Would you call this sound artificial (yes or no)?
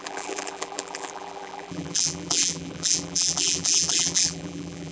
yes